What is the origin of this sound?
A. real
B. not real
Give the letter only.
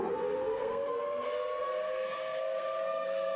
B